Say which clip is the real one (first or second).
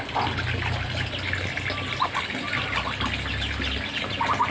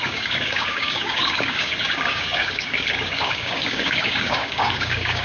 first